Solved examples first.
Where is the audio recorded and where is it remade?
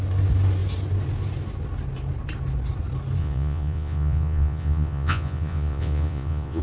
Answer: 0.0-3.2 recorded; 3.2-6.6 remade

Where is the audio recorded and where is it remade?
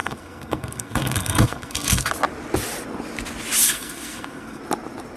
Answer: 0.0-2.1 remade; 2.1-3.6 recorded; 3.6-4.6 remade; 4.6-5.2 recorded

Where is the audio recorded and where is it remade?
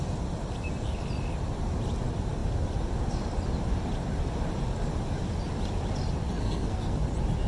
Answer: 0.0-6.4 recorded; 6.4-7.0 remade; 7.0-7.5 recorded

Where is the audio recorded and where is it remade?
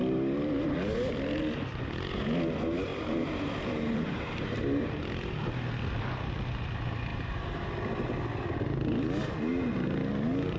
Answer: 0.0-2.9 recorded; 2.9-5.0 remade; 5.0-7.1 recorded; 7.1-7.7 remade; 7.7-10.6 recorded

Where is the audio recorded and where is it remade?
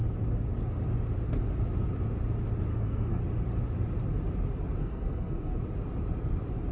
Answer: 0.0-2.7 recorded; 2.7-3.2 remade; 3.2-4.8 recorded; 4.8-5.6 remade; 5.6-6.7 recorded